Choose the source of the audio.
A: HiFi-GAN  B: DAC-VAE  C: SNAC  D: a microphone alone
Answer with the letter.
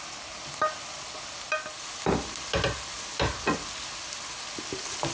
D